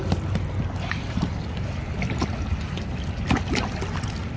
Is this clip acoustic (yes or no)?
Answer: yes